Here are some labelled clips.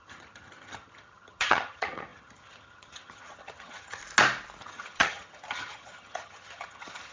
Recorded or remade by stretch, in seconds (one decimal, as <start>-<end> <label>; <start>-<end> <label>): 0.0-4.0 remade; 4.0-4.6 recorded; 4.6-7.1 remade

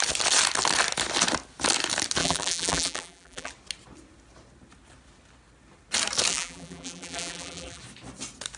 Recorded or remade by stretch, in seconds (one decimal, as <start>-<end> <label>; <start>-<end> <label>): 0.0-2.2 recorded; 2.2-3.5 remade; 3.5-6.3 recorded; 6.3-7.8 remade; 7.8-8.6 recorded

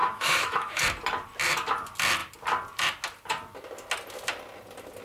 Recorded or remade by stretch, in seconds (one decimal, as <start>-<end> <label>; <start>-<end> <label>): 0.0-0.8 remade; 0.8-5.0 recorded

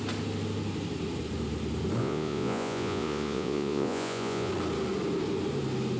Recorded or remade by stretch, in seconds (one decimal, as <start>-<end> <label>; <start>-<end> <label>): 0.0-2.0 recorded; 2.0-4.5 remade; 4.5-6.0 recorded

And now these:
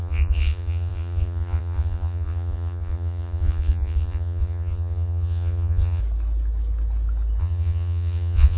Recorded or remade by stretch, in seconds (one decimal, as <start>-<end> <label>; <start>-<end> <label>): 0.0-6.0 remade; 6.0-7.4 recorded; 7.4-8.6 remade